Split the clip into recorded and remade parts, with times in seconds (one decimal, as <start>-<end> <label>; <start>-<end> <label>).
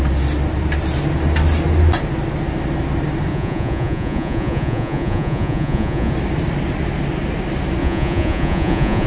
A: 0.0-3.3 recorded; 3.3-6.1 remade; 6.1-7.8 recorded; 7.8-9.1 remade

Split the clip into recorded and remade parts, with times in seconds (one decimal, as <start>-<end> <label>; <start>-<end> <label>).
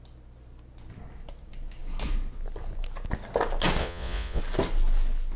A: 0.0-3.8 recorded; 3.8-4.4 remade; 4.4-5.4 recorded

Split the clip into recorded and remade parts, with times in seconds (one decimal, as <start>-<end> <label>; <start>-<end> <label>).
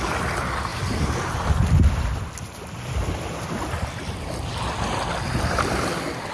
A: 0.0-6.3 recorded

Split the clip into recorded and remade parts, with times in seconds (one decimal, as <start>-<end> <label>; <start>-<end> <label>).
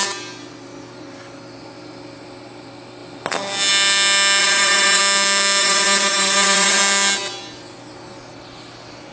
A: 0.0-4.4 recorded; 4.4-5.0 remade; 5.0-5.6 recorded; 5.6-6.8 remade; 6.8-9.1 recorded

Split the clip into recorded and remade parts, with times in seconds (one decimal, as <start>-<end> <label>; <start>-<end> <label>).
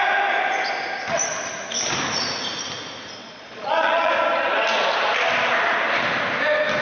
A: 0.0-3.2 recorded; 3.2-4.1 remade; 4.1-6.8 recorded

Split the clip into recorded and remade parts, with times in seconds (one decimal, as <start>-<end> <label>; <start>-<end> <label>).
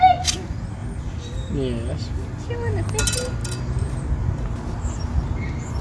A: 0.0-5.8 recorded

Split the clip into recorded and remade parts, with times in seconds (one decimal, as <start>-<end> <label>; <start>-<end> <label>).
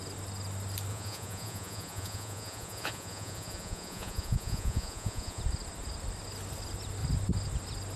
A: 0.0-0.9 recorded; 0.9-5.4 remade; 5.4-8.0 recorded